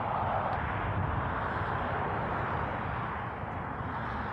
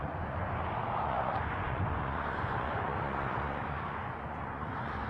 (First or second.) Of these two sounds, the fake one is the second